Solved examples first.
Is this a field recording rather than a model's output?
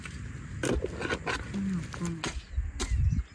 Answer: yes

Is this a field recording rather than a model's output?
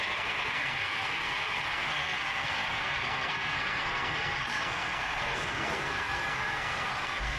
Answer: no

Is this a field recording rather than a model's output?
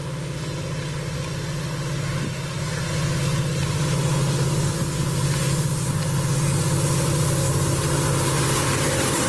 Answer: yes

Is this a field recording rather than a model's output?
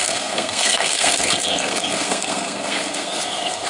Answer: no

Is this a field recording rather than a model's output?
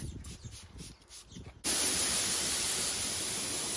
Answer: yes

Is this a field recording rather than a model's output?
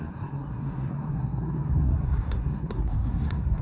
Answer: no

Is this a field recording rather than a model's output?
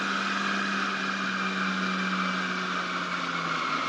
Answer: yes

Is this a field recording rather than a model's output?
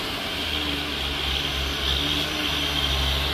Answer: yes